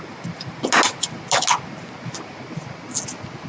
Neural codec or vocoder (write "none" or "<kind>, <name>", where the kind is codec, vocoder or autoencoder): none